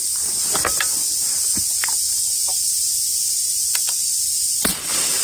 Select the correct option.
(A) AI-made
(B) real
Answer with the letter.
B